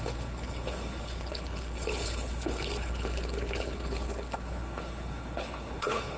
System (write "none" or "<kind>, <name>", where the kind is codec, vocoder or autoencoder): codec, HILCodec